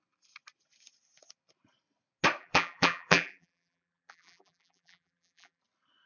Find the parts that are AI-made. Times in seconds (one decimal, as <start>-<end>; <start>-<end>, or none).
2.4-5.6